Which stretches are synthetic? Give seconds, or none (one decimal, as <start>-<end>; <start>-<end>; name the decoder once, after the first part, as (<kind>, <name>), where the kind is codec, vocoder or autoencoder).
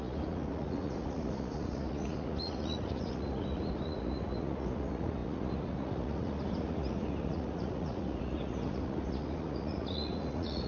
0.0-10.7 (vocoder, Vocos)